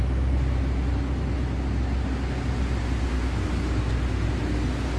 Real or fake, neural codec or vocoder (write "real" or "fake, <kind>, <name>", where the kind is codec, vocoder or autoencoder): real